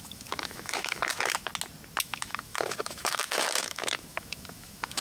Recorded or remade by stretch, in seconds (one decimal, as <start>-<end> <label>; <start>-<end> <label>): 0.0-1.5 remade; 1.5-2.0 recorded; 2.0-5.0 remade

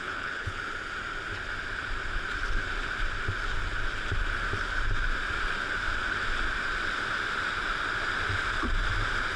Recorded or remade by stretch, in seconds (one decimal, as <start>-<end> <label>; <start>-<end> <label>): 0.0-0.6 remade; 0.6-9.4 recorded

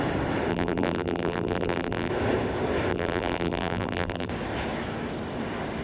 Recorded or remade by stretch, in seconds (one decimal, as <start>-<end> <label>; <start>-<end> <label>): 0.0-0.5 recorded; 0.5-2.1 remade; 2.1-2.9 recorded; 2.9-4.3 remade; 4.3-5.8 recorded

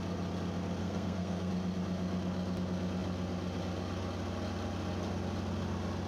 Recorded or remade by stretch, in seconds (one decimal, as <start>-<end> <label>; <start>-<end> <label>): 0.0-0.8 recorded; 0.8-1.5 remade; 1.5-6.1 recorded

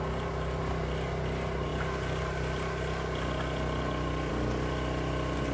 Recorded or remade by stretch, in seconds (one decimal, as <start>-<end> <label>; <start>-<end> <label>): 0.0-5.5 recorded